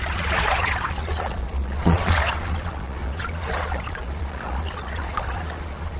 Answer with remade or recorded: remade